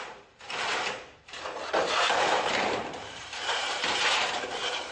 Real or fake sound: fake